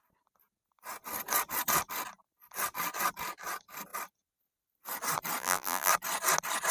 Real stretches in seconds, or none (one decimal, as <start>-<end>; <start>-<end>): 0.0-5.4; 5.9-6.7